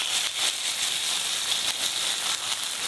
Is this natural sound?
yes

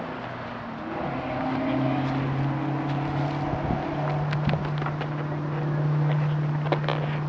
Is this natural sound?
yes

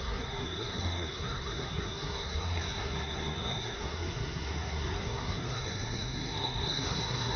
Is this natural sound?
no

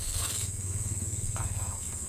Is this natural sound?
no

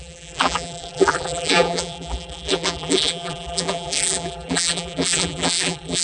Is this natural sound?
no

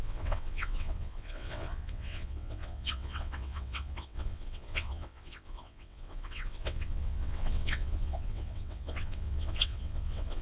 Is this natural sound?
no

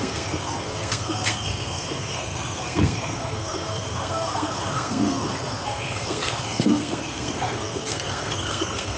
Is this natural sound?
no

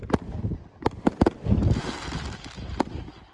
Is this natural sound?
yes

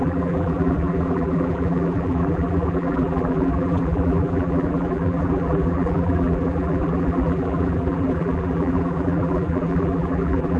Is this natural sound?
no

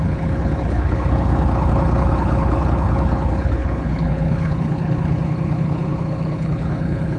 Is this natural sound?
no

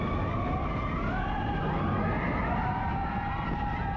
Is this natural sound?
yes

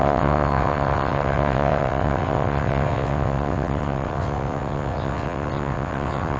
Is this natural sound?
no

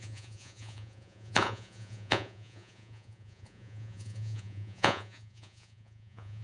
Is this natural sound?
no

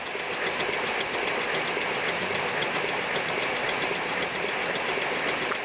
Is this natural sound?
yes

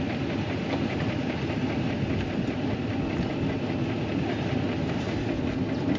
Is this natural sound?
yes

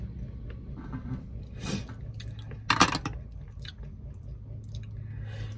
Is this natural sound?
yes